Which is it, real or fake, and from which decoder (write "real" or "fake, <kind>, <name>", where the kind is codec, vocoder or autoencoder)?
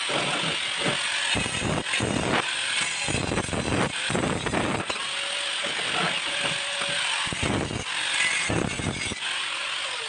real